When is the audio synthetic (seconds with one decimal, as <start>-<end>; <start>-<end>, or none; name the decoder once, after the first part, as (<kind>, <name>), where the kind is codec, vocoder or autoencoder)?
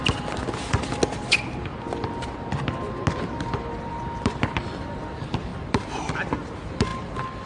0.0-0.4 (vocoder, BigVGAN v2); 3.9-7.5